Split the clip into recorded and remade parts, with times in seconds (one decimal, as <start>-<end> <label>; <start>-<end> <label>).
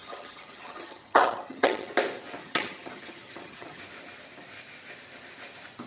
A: 0.0-1.9 remade; 1.9-2.4 recorded; 2.4-3.8 remade; 3.8-5.9 recorded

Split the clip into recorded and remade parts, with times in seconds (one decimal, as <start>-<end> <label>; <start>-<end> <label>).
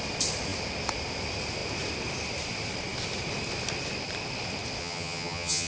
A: 0.0-4.8 recorded; 4.8-5.7 remade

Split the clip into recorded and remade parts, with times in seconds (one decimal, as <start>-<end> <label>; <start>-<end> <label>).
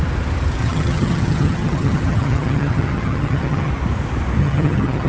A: 0.0-0.6 recorded; 0.6-3.7 remade; 3.7-4.4 recorded; 4.4-5.1 remade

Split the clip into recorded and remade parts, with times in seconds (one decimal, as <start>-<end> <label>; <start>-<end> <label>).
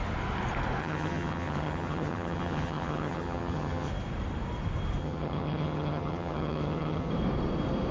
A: 0.0-0.8 recorded; 0.8-3.9 remade; 3.9-5.0 recorded; 5.0-7.1 remade; 7.1-7.9 recorded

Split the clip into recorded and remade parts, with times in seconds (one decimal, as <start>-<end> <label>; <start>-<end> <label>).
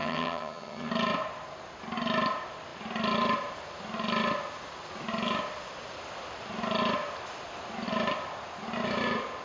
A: 0.0-0.9 remade; 0.9-9.4 recorded